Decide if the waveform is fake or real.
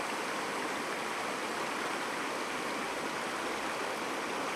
real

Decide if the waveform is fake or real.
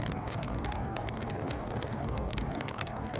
fake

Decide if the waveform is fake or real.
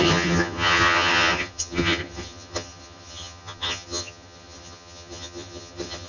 fake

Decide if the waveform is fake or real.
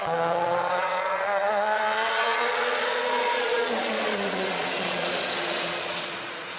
fake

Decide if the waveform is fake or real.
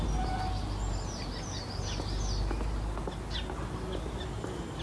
real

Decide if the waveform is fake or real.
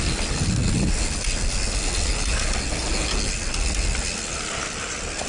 real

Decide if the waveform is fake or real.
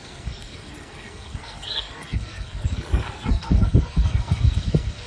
fake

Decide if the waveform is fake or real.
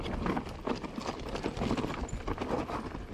real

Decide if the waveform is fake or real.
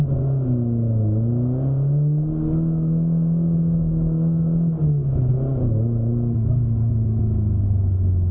real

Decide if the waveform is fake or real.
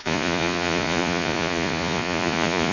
fake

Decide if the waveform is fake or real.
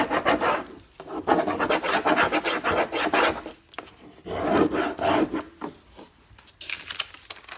real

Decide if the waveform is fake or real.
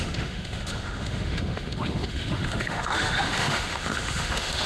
fake